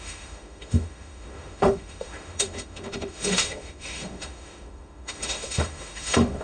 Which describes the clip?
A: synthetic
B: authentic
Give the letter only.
A